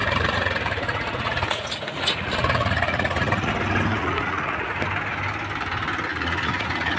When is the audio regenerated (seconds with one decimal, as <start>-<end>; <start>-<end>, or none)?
0.0-3.5; 3.9-4.8; 6.1-7.0